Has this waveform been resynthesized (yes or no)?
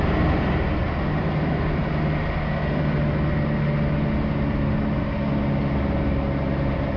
no